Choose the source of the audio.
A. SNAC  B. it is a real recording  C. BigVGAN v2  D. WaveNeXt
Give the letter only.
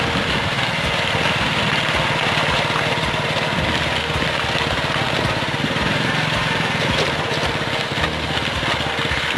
B